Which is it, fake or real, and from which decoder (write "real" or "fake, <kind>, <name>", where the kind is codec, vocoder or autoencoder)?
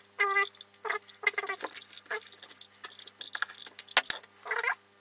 real